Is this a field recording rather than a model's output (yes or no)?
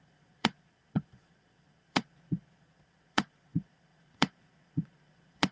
no